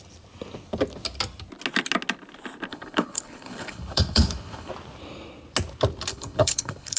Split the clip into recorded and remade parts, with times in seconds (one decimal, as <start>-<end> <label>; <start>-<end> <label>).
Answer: 0.0-2.7 recorded; 2.7-4.7 remade; 4.7-6.1 recorded; 6.1-7.0 remade